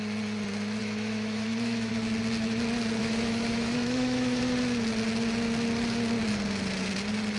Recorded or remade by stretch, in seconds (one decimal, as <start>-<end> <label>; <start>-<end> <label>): 0.0-0.8 recorded; 0.8-1.9 remade; 1.9-3.0 recorded; 3.0-4.4 remade; 4.4-7.4 recorded